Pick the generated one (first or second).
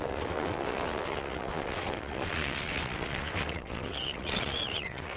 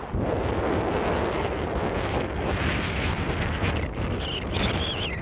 first